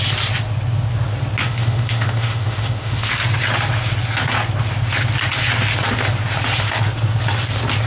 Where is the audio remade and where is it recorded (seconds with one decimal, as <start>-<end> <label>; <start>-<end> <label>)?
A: 0.0-1.4 recorded; 1.4-3.1 remade; 3.1-7.9 recorded